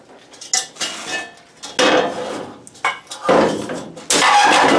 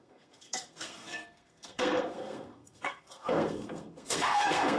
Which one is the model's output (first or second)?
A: second